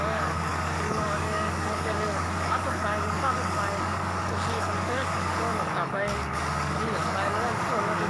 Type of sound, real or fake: fake